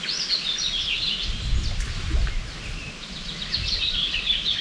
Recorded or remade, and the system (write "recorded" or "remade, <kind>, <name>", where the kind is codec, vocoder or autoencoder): recorded